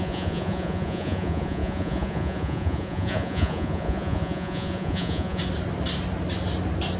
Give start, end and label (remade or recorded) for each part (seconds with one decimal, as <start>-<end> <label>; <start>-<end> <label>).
0.0-5.4 remade; 5.4-7.0 recorded